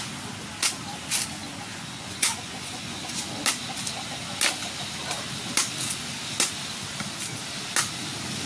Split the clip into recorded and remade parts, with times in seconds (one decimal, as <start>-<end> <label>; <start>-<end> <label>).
0.0-1.4 recorded; 1.4-3.2 remade; 3.2-8.5 recorded